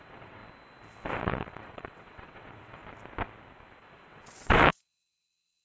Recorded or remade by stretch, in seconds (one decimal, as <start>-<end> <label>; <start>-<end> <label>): 0.0-0.4 remade; 0.4-1.2 recorded; 1.2-2.8 remade; 2.8-3.8 recorded; 3.8-5.6 remade